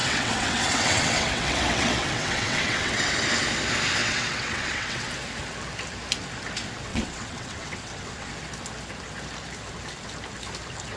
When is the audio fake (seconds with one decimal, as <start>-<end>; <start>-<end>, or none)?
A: 0.0-3.1; 4.0-5.1; 6.9-8.3